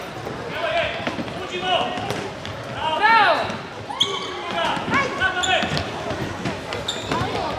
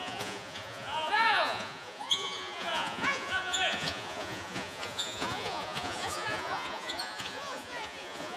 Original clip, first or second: first